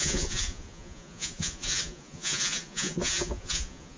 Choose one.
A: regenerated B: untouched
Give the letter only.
A